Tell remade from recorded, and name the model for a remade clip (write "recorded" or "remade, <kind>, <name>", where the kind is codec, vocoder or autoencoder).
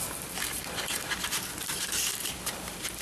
recorded